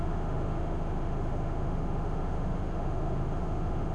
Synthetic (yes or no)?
yes